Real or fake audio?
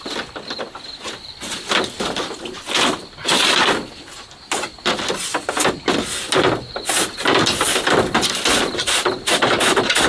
real